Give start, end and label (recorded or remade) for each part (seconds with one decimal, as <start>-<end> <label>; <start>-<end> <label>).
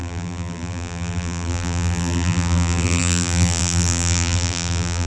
0.0-5.1 remade